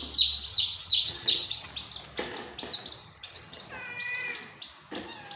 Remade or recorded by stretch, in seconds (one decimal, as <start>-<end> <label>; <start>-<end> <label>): 0.0-0.5 recorded; 0.5-1.7 remade; 1.7-3.0 recorded; 3.0-3.6 remade; 3.6-5.4 recorded